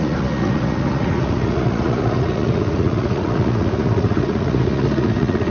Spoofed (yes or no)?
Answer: yes